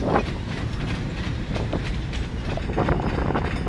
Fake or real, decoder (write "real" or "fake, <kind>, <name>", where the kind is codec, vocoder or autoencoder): fake, vocoder, BigVGAN v2